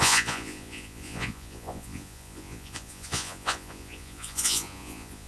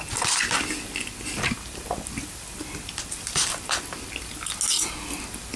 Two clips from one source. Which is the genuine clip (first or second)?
second